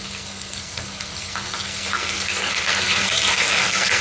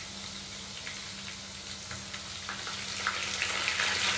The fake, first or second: first